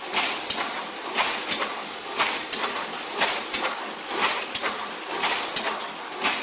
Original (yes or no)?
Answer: yes